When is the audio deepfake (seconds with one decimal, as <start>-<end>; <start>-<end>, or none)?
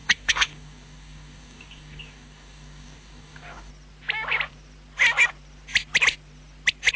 0.0-3.7